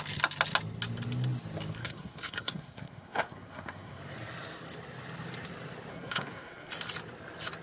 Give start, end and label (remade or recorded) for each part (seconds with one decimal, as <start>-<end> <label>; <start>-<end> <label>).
0.0-1.8 recorded; 1.8-4.0 remade; 4.0-5.9 recorded; 5.9-6.7 remade; 6.7-7.6 recorded